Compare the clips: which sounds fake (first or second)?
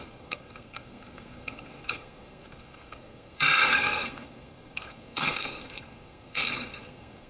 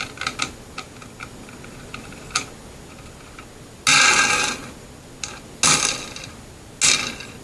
first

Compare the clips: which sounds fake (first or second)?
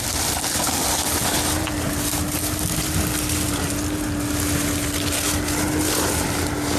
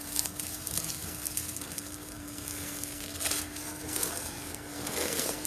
second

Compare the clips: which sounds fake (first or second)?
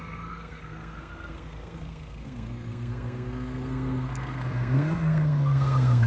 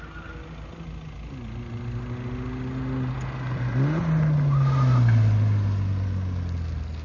first